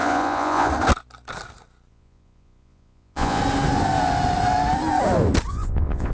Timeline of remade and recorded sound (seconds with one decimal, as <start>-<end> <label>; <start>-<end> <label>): 0.0-0.7 remade; 0.7-1.9 recorded; 1.9-3.4 remade; 3.4-5.5 recorded; 5.5-6.1 remade